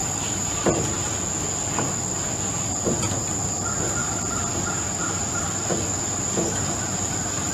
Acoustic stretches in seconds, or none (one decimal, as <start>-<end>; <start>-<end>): 0.0-4.0; 5.0-7.5